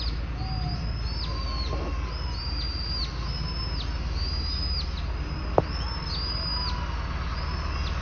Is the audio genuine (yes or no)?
yes